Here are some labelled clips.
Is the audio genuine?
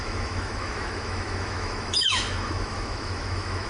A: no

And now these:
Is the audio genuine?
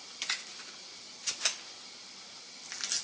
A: yes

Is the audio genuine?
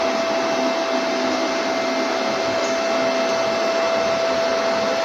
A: yes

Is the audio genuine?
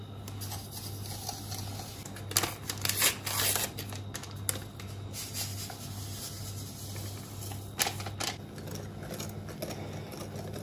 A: yes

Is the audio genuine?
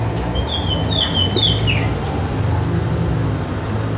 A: yes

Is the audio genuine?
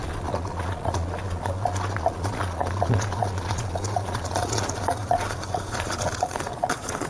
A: no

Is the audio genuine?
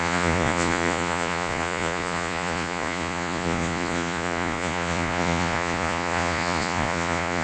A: no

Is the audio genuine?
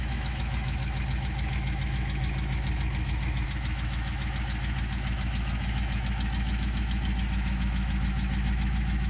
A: no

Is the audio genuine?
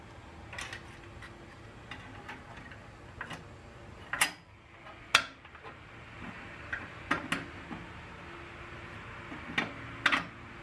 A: yes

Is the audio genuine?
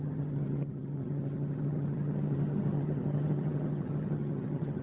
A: no